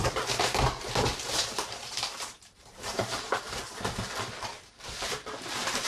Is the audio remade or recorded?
remade